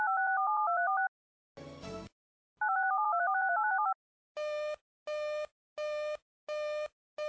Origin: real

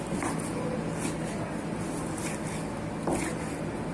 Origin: real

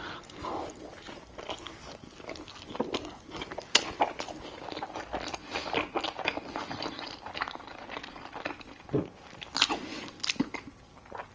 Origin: real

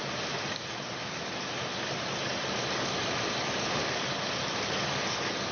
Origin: real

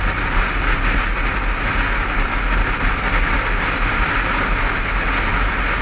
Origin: real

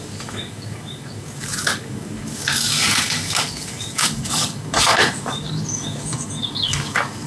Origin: fake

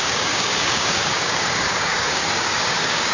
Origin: fake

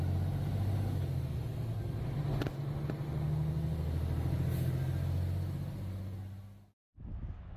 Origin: real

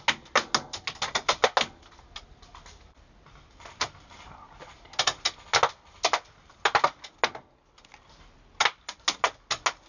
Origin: real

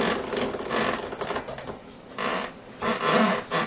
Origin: real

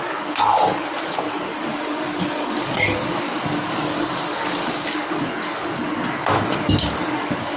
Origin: fake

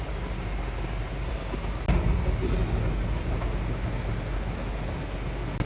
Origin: real